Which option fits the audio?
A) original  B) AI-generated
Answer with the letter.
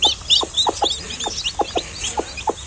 A